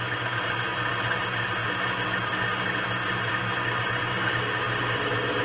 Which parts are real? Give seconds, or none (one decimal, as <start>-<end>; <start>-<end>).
0.0-5.4

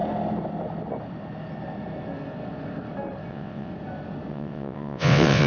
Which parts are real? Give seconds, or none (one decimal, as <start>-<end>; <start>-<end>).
0.0-3.3; 3.7-4.3

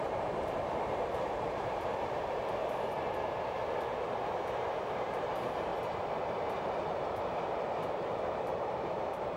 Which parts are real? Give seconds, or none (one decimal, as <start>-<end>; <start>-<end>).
5.7-7.9

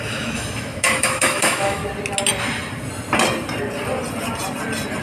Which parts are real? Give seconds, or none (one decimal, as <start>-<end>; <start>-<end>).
1.8-5.0